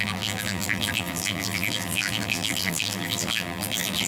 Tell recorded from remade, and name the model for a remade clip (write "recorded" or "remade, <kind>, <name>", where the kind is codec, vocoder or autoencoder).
remade, vocoder, BigVGAN v2